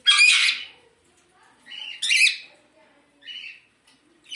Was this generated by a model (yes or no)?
no